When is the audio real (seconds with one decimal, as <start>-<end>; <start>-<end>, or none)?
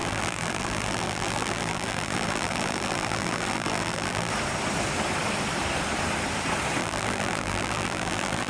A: 4.3-6.8